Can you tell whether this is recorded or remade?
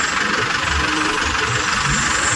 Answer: recorded